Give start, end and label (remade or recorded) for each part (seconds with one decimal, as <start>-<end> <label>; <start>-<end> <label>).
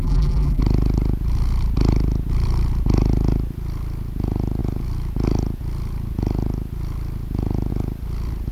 0.0-0.6 remade; 0.6-8.5 recorded